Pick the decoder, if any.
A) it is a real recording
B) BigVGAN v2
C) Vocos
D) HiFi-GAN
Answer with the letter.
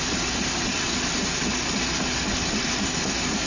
A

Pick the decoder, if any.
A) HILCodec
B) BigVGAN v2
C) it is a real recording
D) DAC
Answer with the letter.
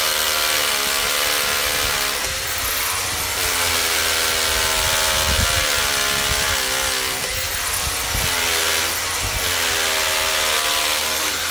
C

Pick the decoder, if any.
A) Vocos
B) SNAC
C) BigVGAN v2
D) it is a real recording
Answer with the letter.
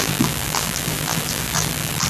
C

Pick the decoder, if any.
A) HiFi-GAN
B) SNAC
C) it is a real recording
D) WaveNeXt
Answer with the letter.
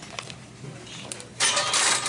C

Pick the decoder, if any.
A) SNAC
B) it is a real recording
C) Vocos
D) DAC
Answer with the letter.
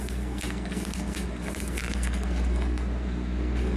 A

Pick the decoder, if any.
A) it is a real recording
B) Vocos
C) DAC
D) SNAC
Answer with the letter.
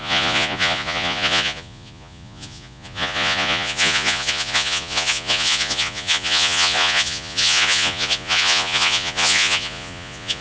B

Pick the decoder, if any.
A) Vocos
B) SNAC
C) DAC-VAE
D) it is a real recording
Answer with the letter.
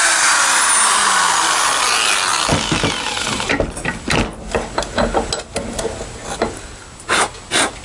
D